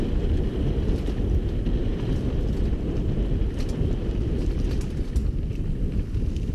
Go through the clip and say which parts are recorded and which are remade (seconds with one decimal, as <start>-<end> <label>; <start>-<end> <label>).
0.0-1.9 recorded; 1.9-2.7 remade; 2.7-5.2 recorded; 5.2-6.5 remade